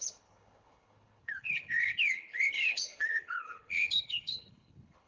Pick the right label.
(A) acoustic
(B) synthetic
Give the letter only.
B